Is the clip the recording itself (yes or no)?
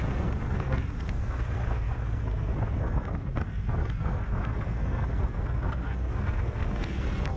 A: no